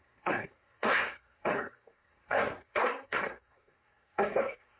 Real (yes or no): no